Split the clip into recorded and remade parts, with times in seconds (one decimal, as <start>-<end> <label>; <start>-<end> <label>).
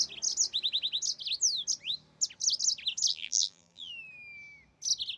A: 0.0-3.1 recorded; 3.1-3.9 remade; 3.9-5.2 recorded